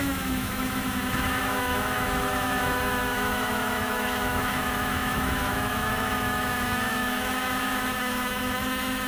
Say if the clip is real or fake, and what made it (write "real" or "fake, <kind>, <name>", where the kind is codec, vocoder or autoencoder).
fake, autoencoder, DAC-VAE